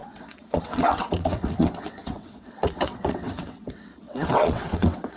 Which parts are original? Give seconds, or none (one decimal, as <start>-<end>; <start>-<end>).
none